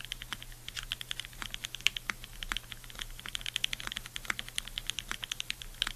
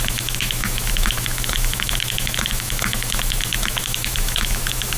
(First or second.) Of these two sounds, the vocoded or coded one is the second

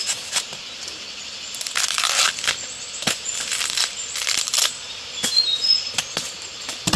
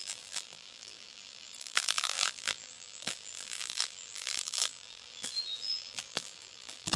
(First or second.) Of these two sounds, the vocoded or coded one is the second